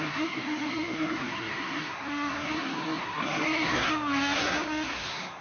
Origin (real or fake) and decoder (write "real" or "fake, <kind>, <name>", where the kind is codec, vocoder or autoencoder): fake, codec, SNAC